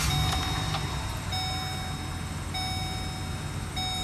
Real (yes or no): yes